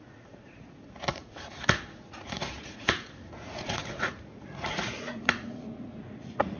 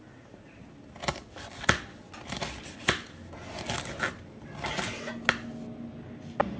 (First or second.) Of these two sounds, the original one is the second